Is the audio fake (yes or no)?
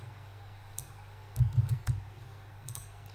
yes